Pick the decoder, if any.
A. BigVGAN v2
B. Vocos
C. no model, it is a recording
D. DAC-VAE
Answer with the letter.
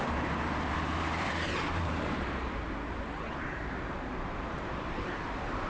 A